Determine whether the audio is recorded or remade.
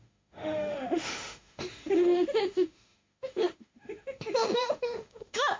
remade